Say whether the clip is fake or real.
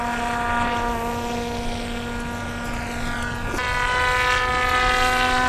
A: real